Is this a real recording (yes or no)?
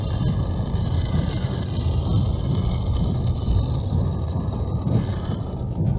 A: yes